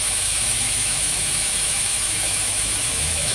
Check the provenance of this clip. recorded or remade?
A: remade